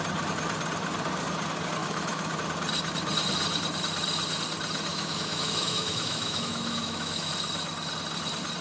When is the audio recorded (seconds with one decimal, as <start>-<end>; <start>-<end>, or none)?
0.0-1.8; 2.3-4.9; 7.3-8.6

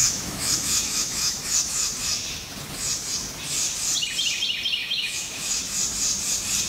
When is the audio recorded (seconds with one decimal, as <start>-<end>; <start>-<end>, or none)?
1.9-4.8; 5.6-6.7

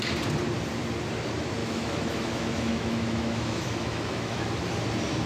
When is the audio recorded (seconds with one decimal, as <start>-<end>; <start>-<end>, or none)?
0.0-1.6; 4.4-5.3

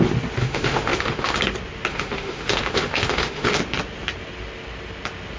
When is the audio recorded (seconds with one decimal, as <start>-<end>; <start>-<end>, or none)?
0.0-0.4; 1.4-1.9; 3.6-5.4

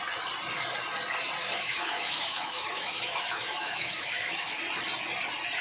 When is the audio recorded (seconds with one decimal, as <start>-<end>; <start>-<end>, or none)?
0.0-1.4; 4.6-5.6

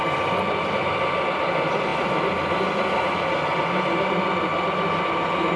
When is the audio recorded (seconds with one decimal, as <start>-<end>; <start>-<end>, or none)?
0.0-5.6